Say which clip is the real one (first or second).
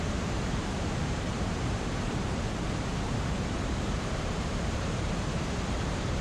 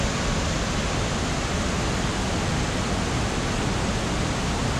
second